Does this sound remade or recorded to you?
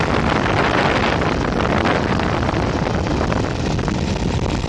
recorded